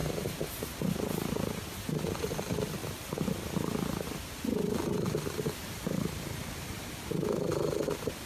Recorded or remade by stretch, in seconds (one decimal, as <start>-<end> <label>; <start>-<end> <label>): 0.0-8.2 recorded